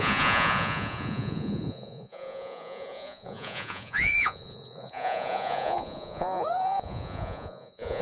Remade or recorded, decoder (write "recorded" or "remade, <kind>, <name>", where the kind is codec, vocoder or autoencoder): remade, vocoder, Vocos